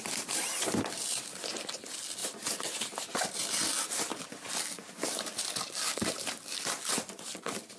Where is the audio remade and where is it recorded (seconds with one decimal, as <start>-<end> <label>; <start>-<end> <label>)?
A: 0.0-7.8 recorded